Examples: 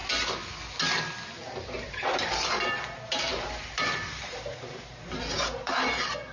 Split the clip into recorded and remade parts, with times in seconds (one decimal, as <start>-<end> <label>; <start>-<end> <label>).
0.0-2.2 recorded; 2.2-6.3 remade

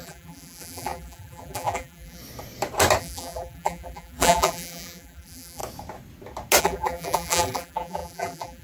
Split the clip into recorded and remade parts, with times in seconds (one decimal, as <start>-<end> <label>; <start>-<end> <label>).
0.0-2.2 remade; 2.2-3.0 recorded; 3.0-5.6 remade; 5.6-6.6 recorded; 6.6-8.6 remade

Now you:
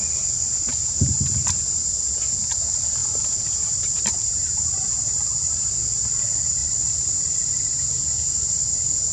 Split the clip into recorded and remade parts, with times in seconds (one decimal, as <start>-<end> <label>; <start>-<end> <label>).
0.0-3.0 recorded; 3.0-5.7 remade; 5.7-6.6 recorded; 6.6-8.4 remade; 8.4-9.1 recorded

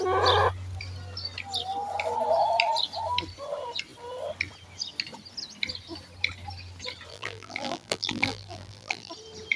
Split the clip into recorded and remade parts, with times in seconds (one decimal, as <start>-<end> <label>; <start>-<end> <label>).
0.0-7.1 recorded; 7.1-9.1 remade; 9.1-9.6 recorded